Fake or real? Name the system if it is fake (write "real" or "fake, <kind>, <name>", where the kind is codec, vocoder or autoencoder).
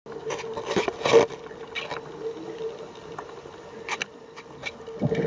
real